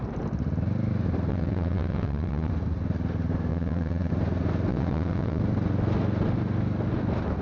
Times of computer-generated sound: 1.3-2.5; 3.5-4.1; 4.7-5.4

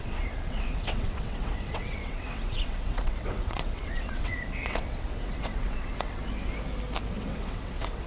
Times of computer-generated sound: 0.0-6.2; 7.1-8.1

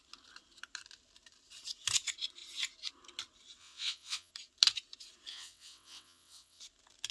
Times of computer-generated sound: 3.6-4.3; 5.3-6.6